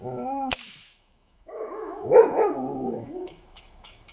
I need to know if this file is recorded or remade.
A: remade